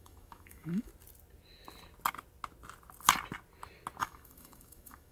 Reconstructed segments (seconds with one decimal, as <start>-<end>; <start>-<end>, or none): 0.0-0.9; 4.0-5.1